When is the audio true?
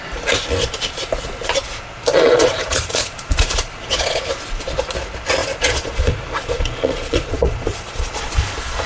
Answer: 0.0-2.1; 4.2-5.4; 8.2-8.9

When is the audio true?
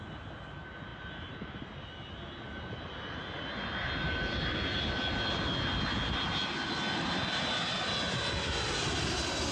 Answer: 0.0-9.5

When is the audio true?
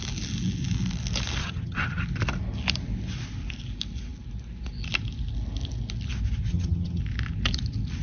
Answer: 0.0-1.4; 2.0-6.5; 7.0-8.0